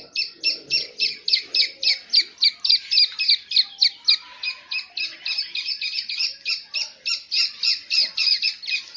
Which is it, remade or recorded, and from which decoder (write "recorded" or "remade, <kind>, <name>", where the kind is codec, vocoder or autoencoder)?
recorded